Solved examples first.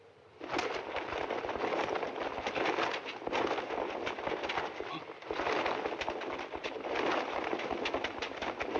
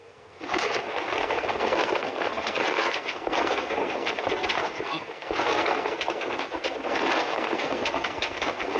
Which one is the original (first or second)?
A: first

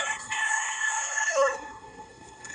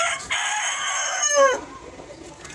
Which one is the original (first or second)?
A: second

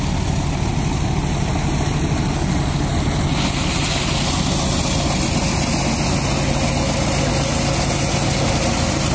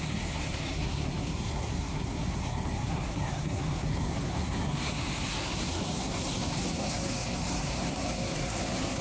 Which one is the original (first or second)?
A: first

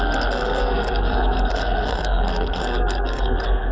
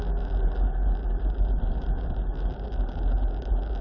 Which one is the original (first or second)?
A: second